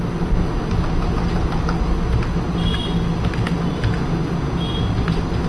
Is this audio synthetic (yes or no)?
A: no